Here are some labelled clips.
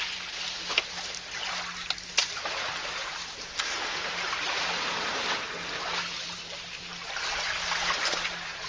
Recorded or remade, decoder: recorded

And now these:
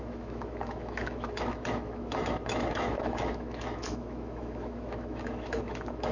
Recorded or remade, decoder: remade, autoencoder, DAC-VAE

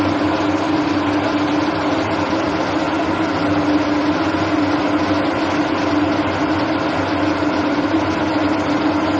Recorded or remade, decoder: recorded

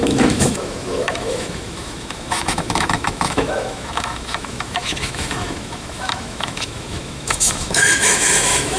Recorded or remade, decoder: remade, autoencoder, DAC-VAE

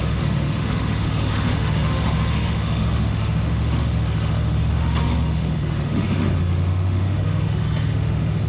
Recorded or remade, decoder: remade, autoencoder, DAC-VAE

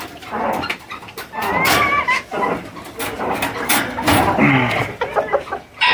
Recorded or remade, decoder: recorded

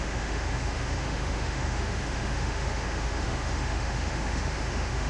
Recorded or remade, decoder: remade, autoencoder, DAC-VAE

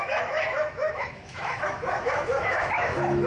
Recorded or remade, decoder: remade, autoencoder, DAC-VAE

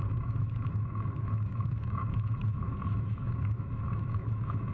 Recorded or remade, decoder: remade, autoencoder, DAC-VAE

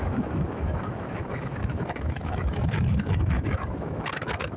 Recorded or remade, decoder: remade, autoencoder, DAC-VAE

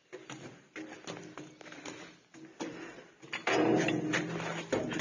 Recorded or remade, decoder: recorded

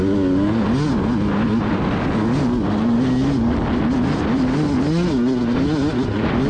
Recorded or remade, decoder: recorded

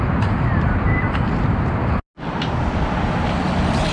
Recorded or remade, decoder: recorded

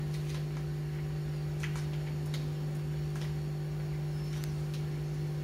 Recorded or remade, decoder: recorded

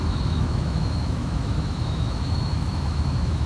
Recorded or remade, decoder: remade, autoencoder, DAC-VAE